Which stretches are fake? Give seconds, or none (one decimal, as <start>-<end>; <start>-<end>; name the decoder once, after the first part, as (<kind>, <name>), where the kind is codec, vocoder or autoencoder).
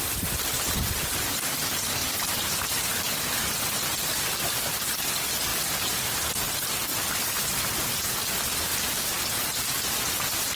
2.0-3.0 (vocoder, BigVGAN v2); 5.5-6.3; 6.9-7.9; 8.7-9.4